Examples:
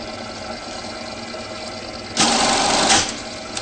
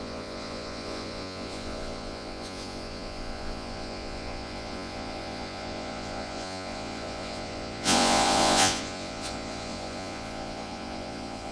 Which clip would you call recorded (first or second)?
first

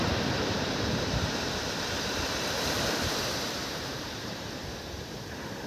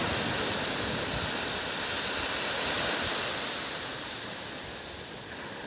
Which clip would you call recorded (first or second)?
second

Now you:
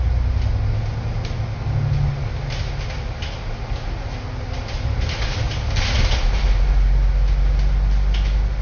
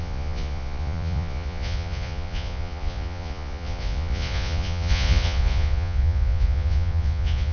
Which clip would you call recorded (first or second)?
first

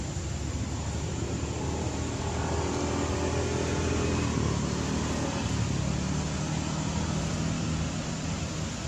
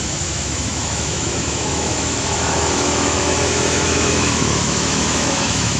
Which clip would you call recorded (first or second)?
first